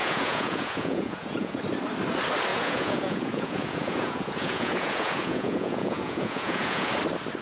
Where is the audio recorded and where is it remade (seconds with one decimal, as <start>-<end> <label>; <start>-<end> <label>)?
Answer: 0.0-1.6 remade; 1.6-2.5 recorded; 2.5-6.9 remade; 6.9-7.4 recorded